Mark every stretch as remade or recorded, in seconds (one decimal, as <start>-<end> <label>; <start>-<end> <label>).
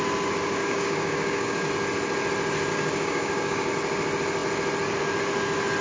0.0-0.6 recorded; 0.6-1.7 remade; 1.7-2.7 recorded; 2.7-3.7 remade; 3.7-5.8 recorded